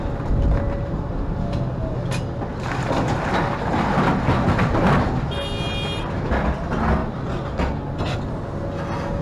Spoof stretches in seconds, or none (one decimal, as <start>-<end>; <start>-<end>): none

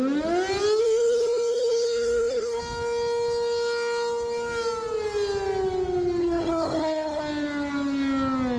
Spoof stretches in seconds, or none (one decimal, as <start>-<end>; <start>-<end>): 0.8-2.6; 6.2-7.2

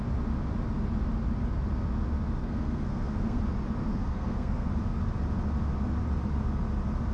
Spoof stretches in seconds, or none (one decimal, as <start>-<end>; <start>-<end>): 2.4-3.4; 3.8-4.7

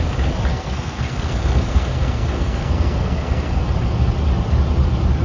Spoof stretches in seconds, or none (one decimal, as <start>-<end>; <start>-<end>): 0.5-3.6

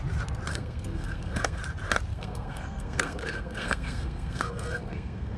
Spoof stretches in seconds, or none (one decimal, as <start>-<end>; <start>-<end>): 0.5-1.6; 2.1-5.4

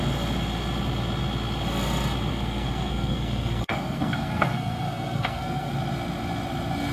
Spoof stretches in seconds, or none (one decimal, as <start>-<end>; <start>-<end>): 2.3-5.7

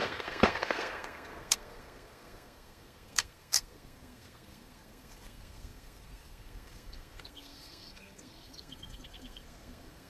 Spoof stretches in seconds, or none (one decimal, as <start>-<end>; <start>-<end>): 0.0-10.1